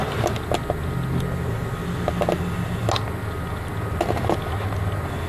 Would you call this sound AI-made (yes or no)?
no